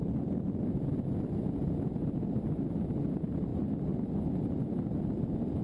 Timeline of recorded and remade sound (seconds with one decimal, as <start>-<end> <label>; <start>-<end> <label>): 0.0-5.6 recorded